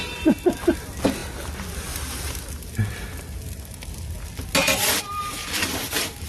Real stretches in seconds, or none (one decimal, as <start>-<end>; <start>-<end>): 0.0-6.3